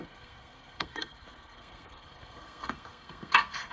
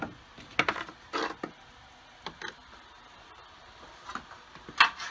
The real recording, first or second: second